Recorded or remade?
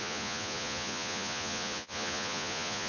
remade